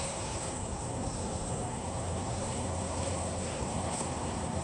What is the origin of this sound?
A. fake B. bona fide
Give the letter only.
A